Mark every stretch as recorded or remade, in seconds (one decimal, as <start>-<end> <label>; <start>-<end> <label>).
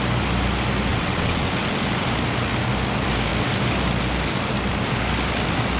0.0-0.9 recorded; 0.9-1.5 remade; 1.5-5.8 recorded